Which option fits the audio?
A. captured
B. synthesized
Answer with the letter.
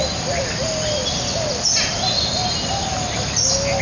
A